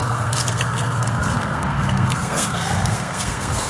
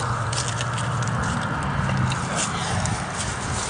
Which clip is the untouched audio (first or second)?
second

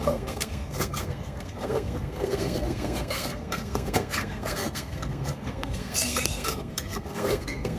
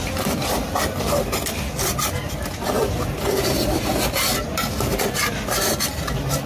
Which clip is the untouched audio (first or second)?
second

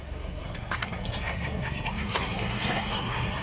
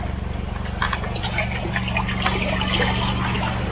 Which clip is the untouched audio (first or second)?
second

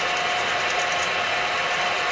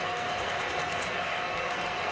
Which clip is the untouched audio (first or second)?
first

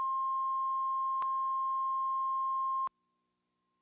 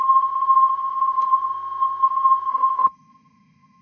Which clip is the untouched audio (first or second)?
first